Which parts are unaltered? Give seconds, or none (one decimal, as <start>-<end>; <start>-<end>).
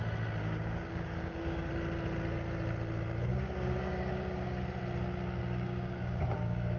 0.0-0.4; 1.7-3.3; 4.6-5.4